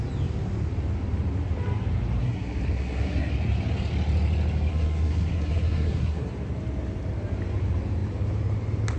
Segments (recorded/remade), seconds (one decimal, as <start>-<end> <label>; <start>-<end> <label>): 0.0-2.2 recorded; 2.2-3.3 remade; 3.3-4.7 recorded; 4.7-6.3 remade; 6.3-9.0 recorded